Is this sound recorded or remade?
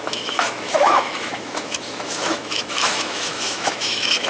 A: remade